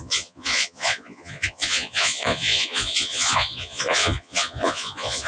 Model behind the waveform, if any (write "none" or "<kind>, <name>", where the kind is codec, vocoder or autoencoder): vocoder, Vocos